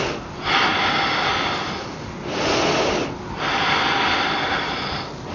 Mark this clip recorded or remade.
recorded